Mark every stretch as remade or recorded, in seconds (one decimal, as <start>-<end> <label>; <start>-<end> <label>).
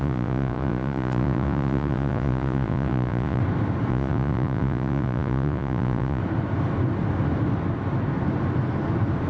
0.0-3.4 remade; 3.4-3.9 recorded; 3.9-6.2 remade; 6.2-9.3 recorded